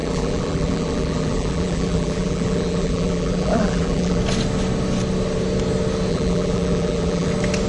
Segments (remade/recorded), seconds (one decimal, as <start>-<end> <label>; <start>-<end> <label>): 0.0-4.2 remade; 4.2-6.1 recorded; 6.1-7.3 remade; 7.3-7.7 recorded